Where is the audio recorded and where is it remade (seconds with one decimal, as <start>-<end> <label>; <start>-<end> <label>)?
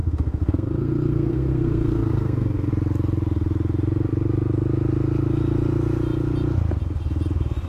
0.0-2.7 remade; 2.7-7.7 recorded